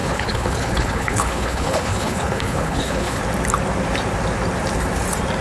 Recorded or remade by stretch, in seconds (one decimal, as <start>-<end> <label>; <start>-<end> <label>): 0.0-3.2 remade; 3.2-5.4 recorded